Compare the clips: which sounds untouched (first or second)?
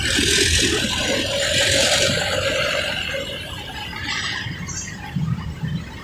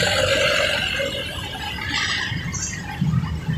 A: second